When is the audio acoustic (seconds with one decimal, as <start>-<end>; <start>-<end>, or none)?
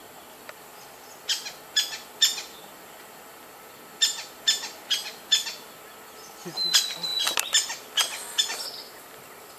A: 0.0-9.6